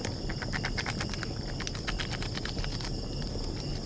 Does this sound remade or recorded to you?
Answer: recorded